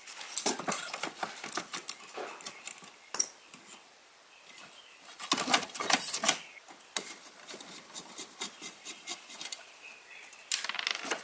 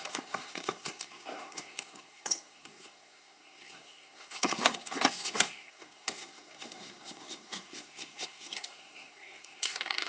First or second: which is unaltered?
first